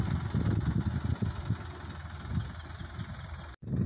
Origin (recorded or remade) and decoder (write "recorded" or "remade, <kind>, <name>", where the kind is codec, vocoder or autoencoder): recorded